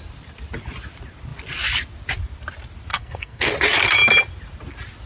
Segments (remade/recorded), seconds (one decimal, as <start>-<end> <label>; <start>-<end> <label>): 0.0-2.9 recorded; 2.9-3.5 remade; 3.5-5.1 recorded